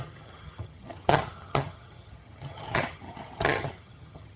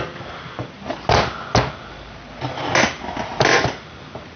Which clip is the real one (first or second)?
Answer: second